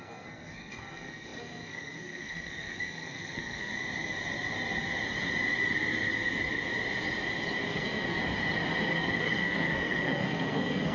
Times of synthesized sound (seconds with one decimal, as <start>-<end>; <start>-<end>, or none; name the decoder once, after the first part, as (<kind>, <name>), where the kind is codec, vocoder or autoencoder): 0.0-3.7 (codec, SNAC); 7.7-8.2; 9.0-10.9